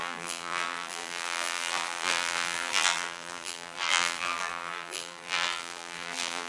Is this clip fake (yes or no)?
yes